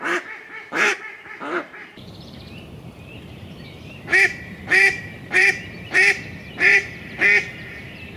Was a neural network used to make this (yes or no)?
yes